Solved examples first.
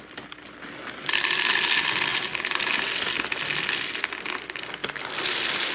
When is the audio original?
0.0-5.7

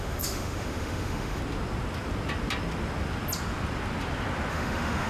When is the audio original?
1.4-4.5

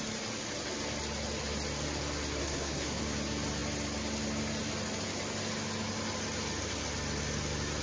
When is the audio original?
0.0-2.4; 3.0-7.8

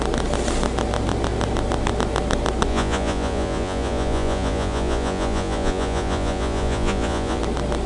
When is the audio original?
0.0-2.7; 7.4-7.9

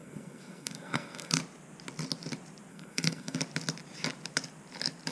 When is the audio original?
1.4-2.7; 3.4-5.1

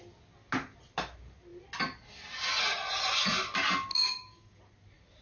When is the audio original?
0.0-3.9; 4.6-5.2

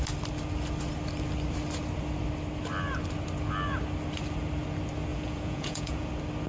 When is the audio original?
0.0-5.1; 6.1-6.5

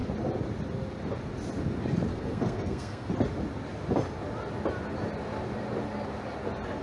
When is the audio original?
0.0-2.1; 3.1-6.8